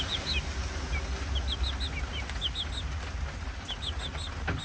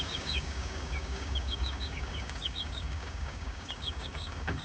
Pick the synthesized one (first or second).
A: second